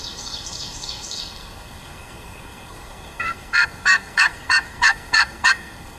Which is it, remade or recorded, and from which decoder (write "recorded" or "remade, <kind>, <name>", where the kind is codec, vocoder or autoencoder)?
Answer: remade, codec, SNAC